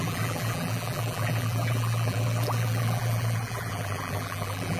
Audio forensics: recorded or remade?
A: remade